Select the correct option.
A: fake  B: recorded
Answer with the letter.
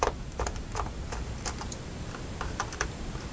A